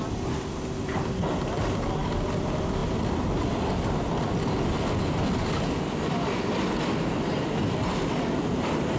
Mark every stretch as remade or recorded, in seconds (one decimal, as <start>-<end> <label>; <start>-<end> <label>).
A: 0.0-9.0 recorded